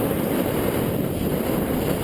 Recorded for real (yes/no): yes